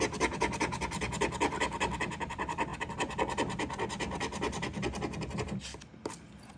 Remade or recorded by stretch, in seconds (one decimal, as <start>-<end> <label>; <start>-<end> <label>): 0.0-6.6 recorded